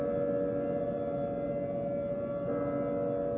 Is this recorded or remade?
recorded